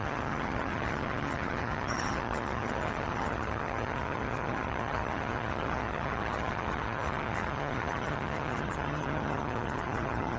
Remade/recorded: remade